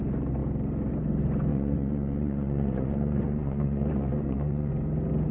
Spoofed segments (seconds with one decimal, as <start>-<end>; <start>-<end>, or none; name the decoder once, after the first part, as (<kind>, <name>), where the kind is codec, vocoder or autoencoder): 1.5-4.7 (vocoder, Vocos)